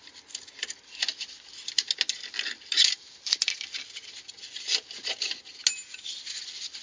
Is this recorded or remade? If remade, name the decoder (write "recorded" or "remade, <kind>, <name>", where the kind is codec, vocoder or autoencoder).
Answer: recorded